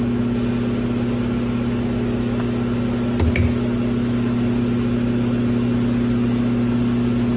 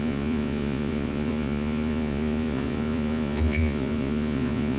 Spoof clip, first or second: second